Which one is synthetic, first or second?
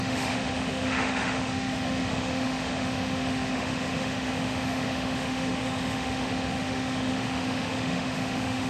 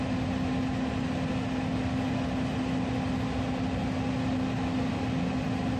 first